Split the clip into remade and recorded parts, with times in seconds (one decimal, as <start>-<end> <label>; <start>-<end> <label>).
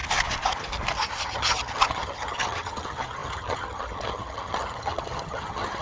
0.0-1.2 recorded; 1.2-5.8 remade